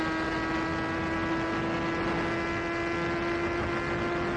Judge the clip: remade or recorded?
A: recorded